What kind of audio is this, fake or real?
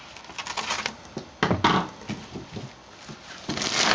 real